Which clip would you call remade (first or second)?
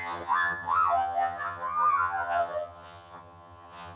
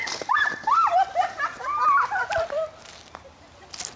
first